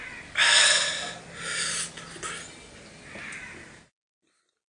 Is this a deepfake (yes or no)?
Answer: no